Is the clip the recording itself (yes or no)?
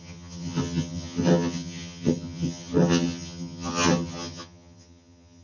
no